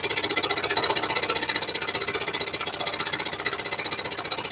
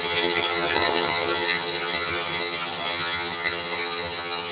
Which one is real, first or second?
first